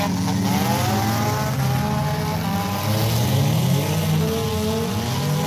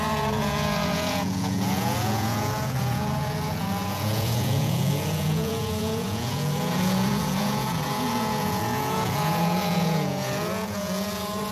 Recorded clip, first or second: first